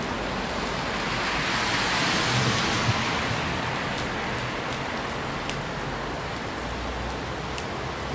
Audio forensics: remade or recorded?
recorded